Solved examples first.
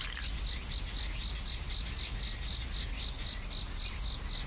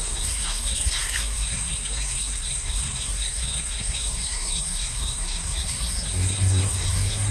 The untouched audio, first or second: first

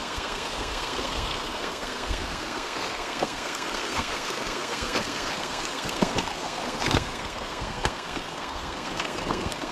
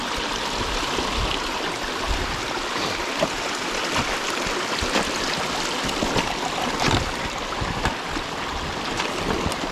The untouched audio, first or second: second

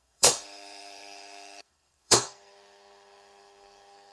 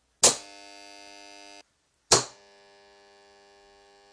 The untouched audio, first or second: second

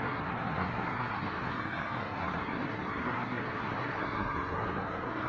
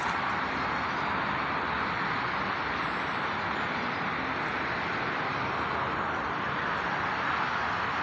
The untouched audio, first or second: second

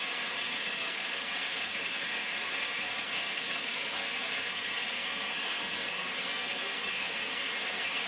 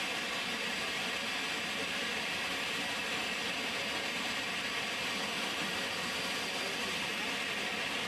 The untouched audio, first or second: second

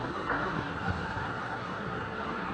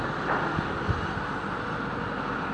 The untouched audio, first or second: second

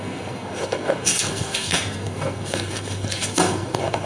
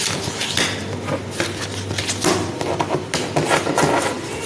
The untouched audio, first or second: second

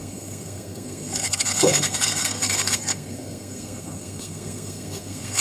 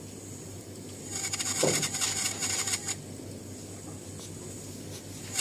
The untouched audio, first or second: second